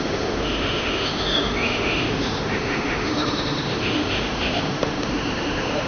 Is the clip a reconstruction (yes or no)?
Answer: yes